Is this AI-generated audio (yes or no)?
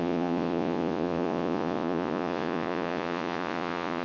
yes